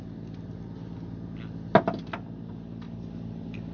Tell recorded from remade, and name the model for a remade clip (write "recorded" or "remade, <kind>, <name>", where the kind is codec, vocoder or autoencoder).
recorded